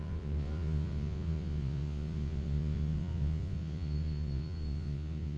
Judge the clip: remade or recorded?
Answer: remade